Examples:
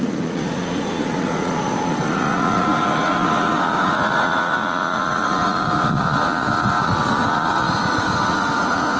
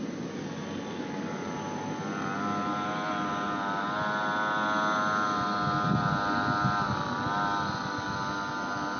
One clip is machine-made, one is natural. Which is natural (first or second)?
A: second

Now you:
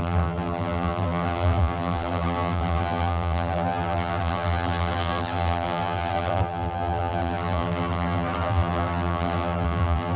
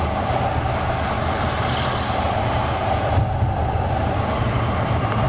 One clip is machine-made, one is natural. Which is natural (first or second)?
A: second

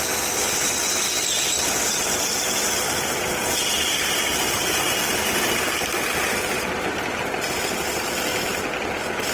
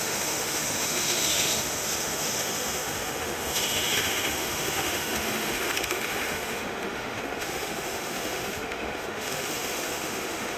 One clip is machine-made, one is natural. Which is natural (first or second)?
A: first